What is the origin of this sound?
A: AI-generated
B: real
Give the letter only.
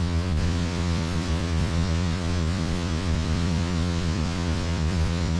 A